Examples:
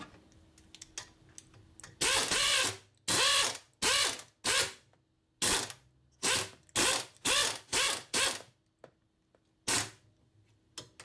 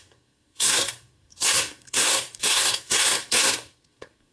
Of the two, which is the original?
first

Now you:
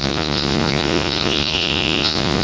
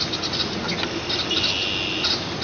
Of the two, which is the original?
second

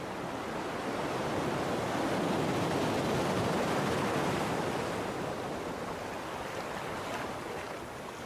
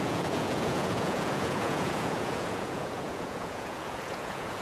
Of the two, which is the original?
first